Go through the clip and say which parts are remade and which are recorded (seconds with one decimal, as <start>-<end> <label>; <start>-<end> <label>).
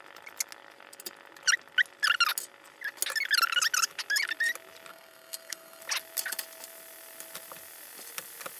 0.0-4.9 recorded; 4.9-5.8 remade; 5.8-8.6 recorded